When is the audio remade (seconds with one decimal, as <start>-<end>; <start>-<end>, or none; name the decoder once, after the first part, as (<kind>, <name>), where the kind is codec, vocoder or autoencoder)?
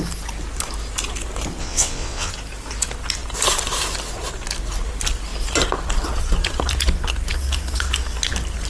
1.6-2.3 (vocoder, WaveNeXt)